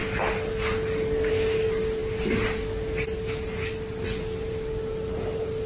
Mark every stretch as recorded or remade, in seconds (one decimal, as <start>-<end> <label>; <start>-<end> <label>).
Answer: 0.0-5.7 recorded

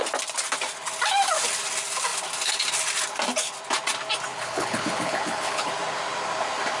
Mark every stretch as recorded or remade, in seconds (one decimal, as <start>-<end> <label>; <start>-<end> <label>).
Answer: 0.0-4.3 recorded; 4.3-5.7 remade; 5.7-6.8 recorded

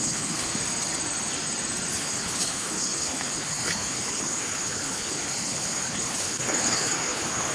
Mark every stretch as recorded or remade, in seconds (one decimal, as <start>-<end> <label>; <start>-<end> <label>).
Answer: 0.0-0.5 remade; 0.5-2.0 recorded; 2.0-7.5 remade

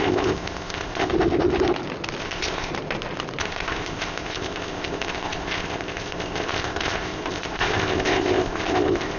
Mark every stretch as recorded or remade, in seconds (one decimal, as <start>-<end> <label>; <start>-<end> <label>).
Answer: 0.0-1.1 remade; 1.1-2.2 recorded; 2.2-2.7 remade; 2.7-3.4 recorded; 3.4-9.2 remade

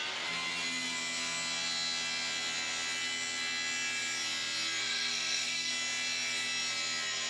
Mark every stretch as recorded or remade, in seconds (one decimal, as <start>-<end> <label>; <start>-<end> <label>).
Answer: 0.0-4.8 recorded; 4.8-5.7 remade; 5.7-7.3 recorded

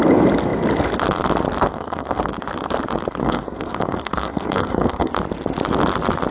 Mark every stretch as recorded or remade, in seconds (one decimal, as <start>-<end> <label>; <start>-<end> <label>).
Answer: 0.0-1.7 recorded; 1.7-2.2 remade; 2.2-3.2 recorded; 3.2-5.1 remade; 5.1-6.3 recorded

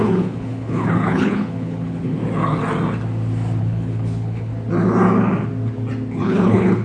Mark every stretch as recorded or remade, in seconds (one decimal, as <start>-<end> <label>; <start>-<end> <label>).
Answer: 0.0-2.2 remade; 2.2-3.6 recorded; 3.6-4.5 remade; 4.5-6.2 recorded; 6.2-6.8 remade

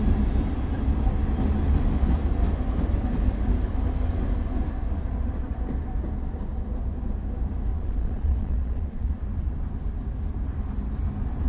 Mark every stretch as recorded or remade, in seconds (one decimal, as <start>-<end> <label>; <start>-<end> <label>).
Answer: 0.0-7.7 recorded; 7.7-9.1 remade; 9.1-11.5 recorded